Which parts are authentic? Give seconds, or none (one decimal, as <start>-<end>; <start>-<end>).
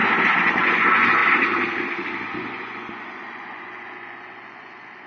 0.0-0.5; 1.2-2.4